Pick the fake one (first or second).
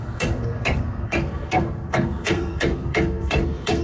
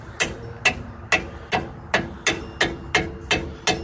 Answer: first